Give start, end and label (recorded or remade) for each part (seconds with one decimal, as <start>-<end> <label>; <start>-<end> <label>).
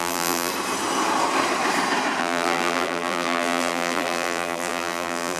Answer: 0.0-0.5 remade; 0.5-2.2 recorded; 2.2-5.4 remade